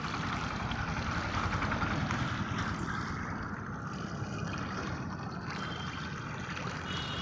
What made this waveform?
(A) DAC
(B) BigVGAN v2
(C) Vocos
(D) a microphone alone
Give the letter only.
D